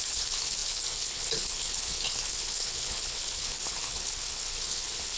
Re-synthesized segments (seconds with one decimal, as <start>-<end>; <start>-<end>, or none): 0.0-5.2